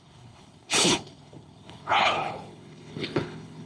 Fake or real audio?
fake